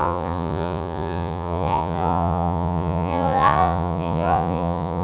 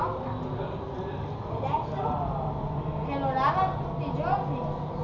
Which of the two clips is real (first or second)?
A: second